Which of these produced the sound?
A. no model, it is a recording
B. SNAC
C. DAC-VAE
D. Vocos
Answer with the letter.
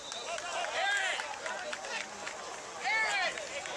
A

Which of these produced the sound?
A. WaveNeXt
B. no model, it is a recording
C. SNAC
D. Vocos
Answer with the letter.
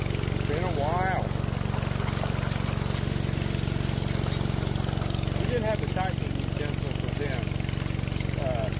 B